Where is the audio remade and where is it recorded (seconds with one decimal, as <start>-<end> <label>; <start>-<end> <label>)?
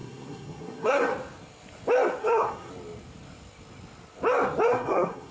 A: 0.0-1.1 remade; 1.1-2.2 recorded; 2.2-2.7 remade; 2.7-4.7 recorded; 4.7-5.3 remade